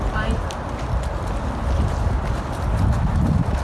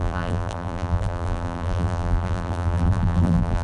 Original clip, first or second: first